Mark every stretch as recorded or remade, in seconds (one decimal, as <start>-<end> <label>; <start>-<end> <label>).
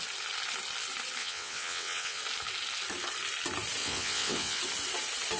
0.0-1.2 recorded; 1.2-2.2 remade; 2.2-3.8 recorded; 3.8-4.6 remade; 4.6-5.4 recorded